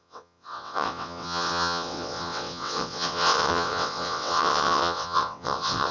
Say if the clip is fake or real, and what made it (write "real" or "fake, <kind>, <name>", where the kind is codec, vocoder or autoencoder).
fake, vocoder, WaveNeXt